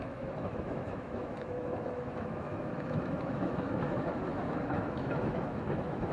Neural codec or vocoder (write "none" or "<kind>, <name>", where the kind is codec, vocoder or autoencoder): autoencoder, DAC-VAE